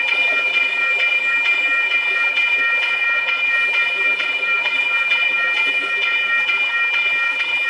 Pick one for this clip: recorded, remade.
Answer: remade